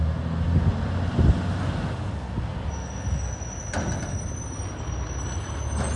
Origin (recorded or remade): recorded